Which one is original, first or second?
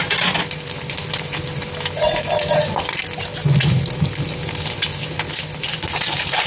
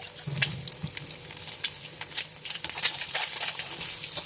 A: first